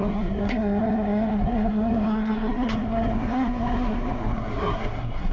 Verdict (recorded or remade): remade